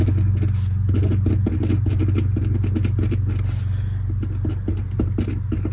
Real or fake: real